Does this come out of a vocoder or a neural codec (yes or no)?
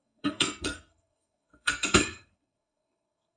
yes